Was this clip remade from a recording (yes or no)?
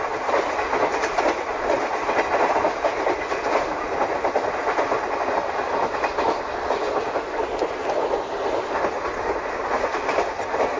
no